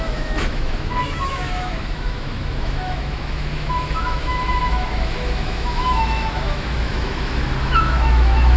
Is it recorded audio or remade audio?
remade